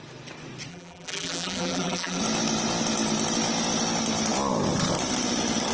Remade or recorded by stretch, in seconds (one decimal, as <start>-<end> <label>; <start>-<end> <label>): 0.0-0.7 recorded; 0.7-2.2 remade; 2.2-5.7 recorded